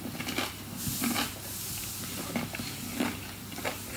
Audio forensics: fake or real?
real